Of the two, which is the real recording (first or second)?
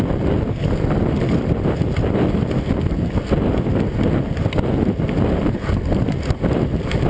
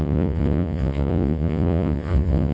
first